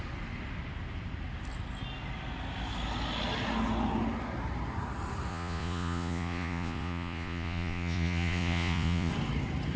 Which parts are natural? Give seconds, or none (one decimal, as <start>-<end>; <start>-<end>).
0.0-5.3; 9.1-9.8